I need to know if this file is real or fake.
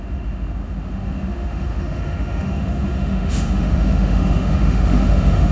fake